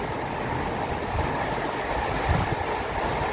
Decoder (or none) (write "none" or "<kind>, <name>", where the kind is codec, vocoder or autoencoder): none